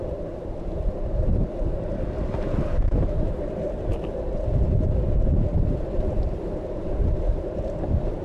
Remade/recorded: remade